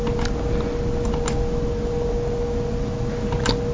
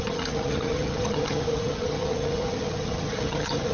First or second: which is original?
first